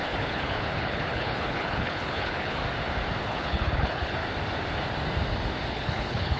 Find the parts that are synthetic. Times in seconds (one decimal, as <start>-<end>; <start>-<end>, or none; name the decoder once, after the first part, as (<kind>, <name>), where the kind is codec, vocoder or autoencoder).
0.0-2.6 (codec, HILCodec); 3.2-4.2; 5.7-6.4